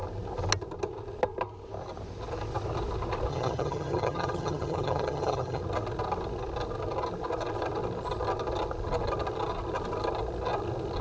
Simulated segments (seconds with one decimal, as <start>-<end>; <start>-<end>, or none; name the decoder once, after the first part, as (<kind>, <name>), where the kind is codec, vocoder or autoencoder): 3.3-5.6 (vocoder, HiFi-GAN)